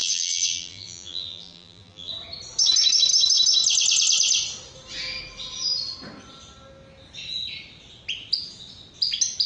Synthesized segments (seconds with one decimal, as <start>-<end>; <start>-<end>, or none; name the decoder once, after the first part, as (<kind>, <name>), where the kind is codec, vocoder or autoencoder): 0.0-2.1 (vocoder, BigVGAN v2)